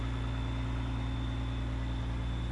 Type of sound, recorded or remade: recorded